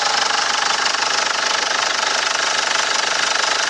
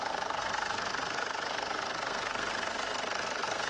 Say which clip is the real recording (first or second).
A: first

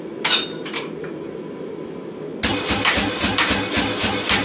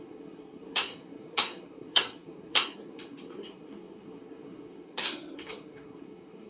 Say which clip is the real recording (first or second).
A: first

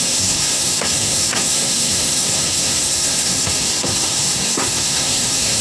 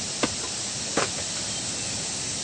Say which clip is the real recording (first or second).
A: second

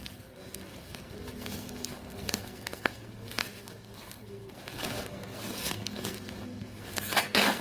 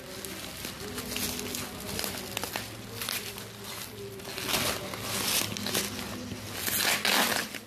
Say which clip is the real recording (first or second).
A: second